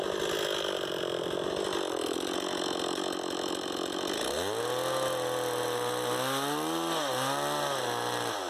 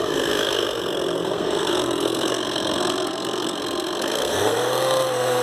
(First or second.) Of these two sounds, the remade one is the second